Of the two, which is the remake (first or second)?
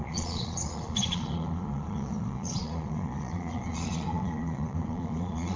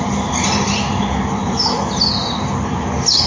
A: first